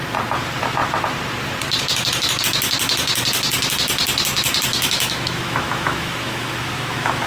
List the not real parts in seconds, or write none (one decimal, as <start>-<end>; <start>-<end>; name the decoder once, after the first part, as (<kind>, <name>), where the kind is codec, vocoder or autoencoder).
4.7-7.3 (autoencoder, DAC-VAE)